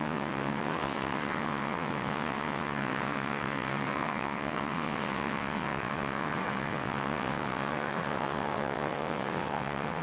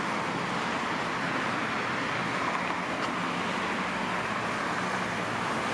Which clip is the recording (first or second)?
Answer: second